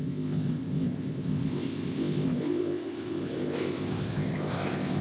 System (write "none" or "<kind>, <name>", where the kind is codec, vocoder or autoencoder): codec, ZipCodec